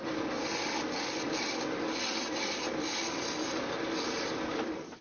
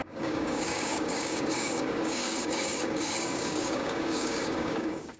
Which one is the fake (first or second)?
second